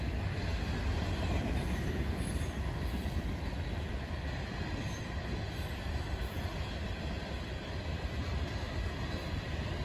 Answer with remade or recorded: recorded